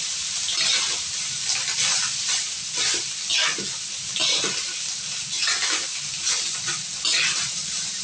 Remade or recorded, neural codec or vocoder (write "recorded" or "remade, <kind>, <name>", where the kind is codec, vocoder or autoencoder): recorded